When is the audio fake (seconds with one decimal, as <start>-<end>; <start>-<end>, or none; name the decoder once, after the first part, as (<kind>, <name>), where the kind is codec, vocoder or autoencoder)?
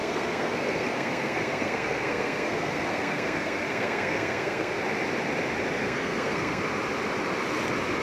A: 0.0-4.8 (codec, SNAC); 5.8-6.6